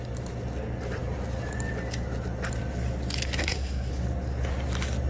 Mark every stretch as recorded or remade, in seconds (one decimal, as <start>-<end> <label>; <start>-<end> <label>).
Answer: 0.0-3.4 recorded; 3.4-3.9 remade; 3.9-5.1 recorded